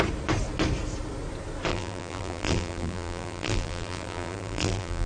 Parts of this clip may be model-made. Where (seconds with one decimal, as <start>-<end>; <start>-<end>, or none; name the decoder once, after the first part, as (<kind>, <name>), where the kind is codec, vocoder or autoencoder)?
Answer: 1.7-5.1 (vocoder, BigVGAN v2)